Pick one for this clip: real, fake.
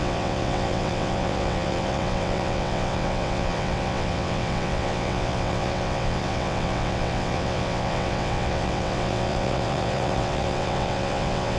fake